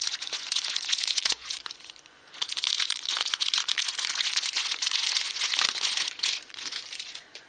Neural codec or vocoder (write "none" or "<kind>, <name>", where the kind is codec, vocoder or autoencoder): vocoder, Vocos